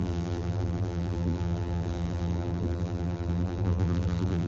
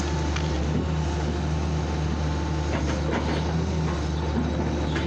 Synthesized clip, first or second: first